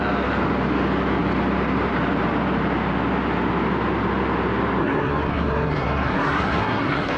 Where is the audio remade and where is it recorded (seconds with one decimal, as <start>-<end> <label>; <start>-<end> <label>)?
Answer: 0.0-4.8 recorded; 4.8-7.2 remade